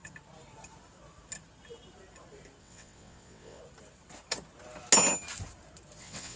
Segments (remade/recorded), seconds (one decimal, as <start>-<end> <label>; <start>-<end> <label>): 0.0-2.6 recorded; 2.6-3.6 remade; 3.6-6.0 recorded; 6.0-6.4 remade